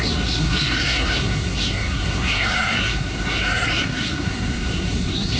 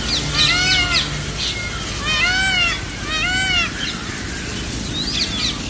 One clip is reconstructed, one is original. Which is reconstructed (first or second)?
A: first